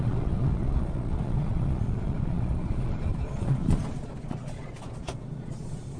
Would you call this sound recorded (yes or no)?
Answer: no